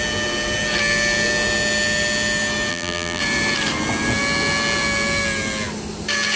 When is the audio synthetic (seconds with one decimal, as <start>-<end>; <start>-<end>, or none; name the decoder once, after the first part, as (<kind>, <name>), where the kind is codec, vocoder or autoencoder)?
2.7-3.2 (vocoder, BigVGAN v2)

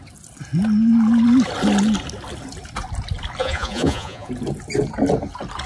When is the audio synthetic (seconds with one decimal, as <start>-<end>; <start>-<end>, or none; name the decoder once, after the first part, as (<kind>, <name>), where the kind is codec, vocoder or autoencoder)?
3.4-4.3 (vocoder, Vocos)

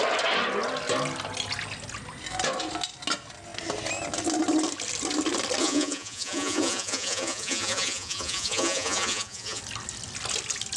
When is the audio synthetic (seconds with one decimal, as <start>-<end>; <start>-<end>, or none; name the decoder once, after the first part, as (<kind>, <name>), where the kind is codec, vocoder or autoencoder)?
5.6-9.6 (vocoder, Vocos)